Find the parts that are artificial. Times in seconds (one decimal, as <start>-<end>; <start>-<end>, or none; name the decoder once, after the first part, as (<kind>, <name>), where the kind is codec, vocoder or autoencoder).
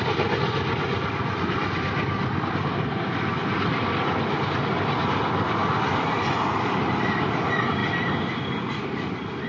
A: none